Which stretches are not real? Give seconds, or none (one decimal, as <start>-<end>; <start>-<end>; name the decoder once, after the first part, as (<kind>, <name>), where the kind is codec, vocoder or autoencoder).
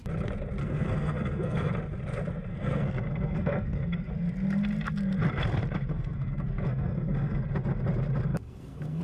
0.6-1.7 (codec, SNAC); 2.5-4.1; 5.9-7.4; 8.3-9.0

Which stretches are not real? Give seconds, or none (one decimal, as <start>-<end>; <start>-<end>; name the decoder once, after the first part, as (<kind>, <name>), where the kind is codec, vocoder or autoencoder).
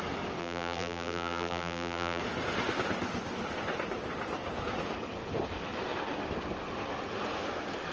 0.4-2.2 (vocoder, BigVGAN v2)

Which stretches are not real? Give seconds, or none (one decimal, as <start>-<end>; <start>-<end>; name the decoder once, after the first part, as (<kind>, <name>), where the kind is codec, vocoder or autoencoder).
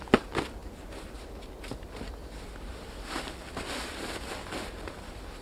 none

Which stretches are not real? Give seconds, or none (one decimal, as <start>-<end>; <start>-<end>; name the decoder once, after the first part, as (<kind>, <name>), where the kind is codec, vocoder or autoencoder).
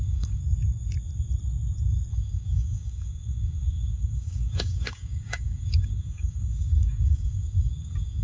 0.0-0.4 (codec, DAC); 2.1-8.2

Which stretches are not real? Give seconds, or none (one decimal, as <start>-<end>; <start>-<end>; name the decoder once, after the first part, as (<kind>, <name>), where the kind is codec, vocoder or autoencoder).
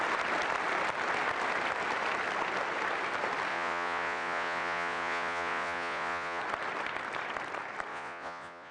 3.5-6.4 (vocoder, Vocos); 7.9-8.7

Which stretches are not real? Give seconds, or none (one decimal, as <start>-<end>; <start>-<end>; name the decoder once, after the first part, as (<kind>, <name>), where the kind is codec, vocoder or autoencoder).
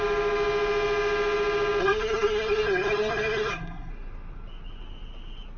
1.8-3.9 (codec, SNAC)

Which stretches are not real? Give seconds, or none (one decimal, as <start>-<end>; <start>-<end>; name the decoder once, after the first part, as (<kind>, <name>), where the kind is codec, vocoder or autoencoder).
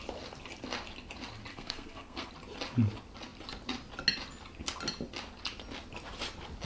1.5-2.3 (codec, SNAC)